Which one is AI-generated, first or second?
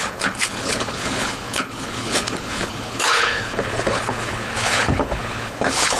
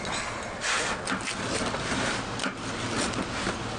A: first